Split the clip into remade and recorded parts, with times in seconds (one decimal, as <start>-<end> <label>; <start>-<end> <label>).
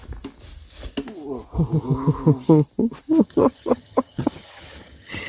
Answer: 0.0-3.2 recorded; 3.2-5.3 remade